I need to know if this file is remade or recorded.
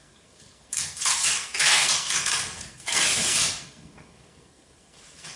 remade